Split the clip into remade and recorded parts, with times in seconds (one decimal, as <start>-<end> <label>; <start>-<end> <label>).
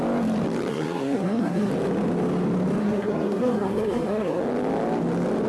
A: 0.0-0.7 recorded; 0.7-1.7 remade; 1.7-2.8 recorded; 2.8-4.4 remade; 4.4-5.5 recorded